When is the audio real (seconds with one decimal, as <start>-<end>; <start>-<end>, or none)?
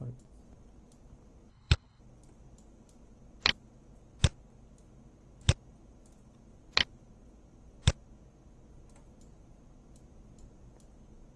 0.0-1.5; 2.0-11.4